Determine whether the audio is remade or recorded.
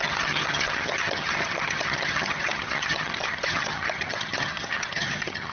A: remade